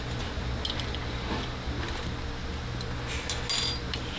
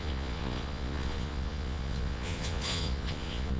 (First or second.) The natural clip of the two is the first